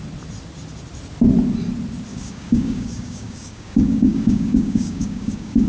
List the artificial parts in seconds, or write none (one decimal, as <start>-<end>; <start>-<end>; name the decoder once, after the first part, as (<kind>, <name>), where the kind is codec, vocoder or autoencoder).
2.1-5.7 (codec, DAC)